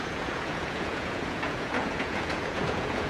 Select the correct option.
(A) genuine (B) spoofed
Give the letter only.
B